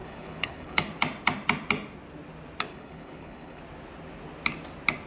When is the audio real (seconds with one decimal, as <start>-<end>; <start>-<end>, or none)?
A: 0.8-2.7; 3.6-5.1